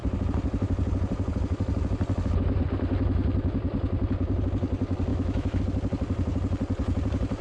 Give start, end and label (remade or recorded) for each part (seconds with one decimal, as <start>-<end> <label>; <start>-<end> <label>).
0.0-5.1 recorded; 5.1-5.6 remade; 5.6-7.4 recorded